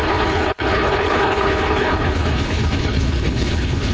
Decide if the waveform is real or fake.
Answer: fake